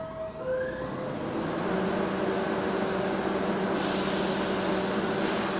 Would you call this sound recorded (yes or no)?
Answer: yes